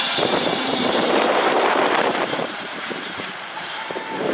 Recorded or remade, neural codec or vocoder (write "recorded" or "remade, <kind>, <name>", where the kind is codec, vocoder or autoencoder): remade, vocoder, BigVGAN v2